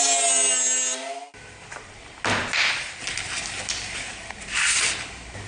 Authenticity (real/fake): real